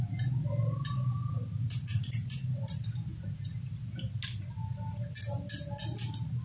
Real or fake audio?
real